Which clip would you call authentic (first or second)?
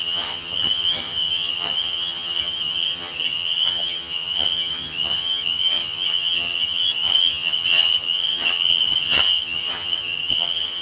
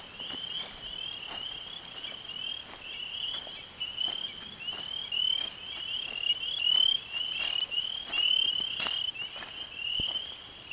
second